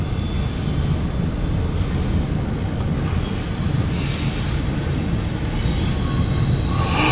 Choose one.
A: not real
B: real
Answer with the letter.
B